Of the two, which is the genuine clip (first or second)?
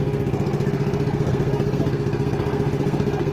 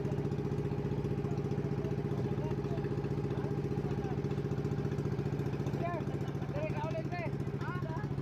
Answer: second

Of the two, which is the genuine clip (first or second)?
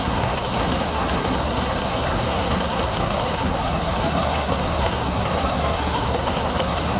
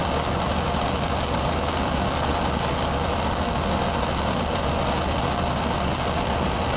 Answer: second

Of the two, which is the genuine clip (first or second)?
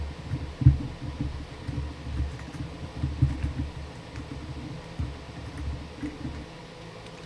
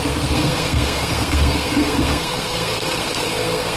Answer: first